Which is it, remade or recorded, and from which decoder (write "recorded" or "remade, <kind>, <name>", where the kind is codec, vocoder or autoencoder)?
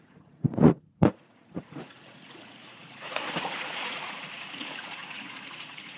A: remade, vocoder, Vocos